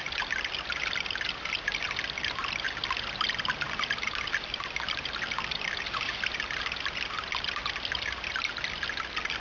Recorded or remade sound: recorded